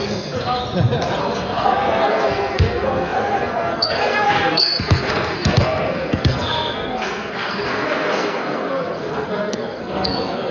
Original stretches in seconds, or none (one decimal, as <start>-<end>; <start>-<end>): 0.6-1.2